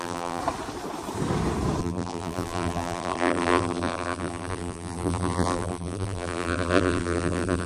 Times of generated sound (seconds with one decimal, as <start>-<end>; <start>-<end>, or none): 0.0-0.4; 1.8-7.7